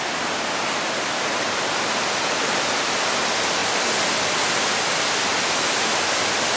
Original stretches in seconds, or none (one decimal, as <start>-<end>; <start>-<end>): 0.0-6.6